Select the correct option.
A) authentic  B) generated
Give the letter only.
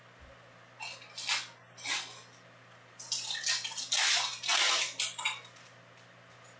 A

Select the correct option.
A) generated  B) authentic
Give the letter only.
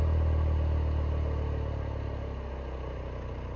B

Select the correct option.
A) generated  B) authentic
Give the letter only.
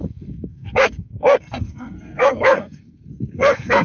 A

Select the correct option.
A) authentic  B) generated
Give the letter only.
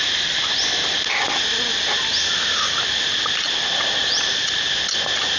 A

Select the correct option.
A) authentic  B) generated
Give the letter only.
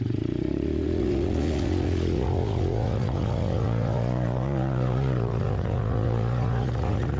B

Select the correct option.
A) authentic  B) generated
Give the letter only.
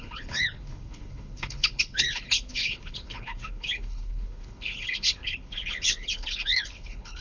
B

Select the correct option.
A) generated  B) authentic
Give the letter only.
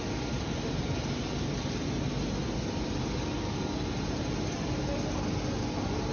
B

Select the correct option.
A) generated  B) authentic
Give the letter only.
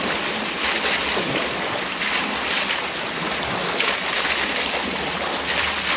B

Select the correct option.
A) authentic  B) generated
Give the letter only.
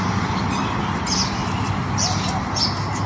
A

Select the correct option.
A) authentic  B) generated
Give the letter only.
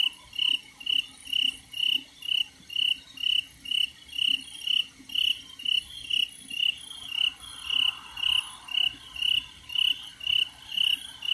A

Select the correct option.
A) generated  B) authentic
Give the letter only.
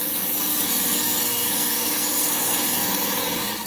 A